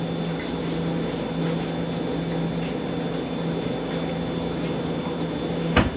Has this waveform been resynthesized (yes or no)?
no